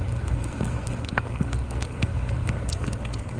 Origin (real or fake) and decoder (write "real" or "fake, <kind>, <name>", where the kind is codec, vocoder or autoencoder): fake, codec, SNAC